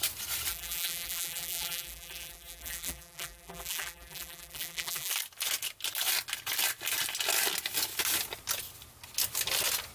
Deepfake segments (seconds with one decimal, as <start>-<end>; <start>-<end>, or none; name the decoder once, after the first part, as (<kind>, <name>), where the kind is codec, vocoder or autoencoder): 0.5-5.1 (vocoder, BigVGAN v2)